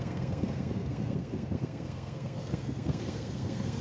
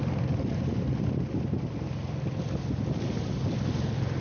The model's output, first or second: first